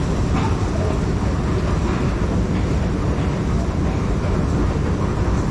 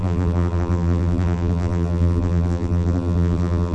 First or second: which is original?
first